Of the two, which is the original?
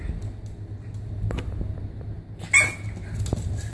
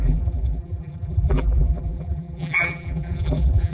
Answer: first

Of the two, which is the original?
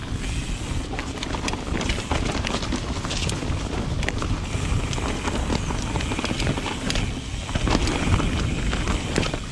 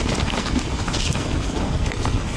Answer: first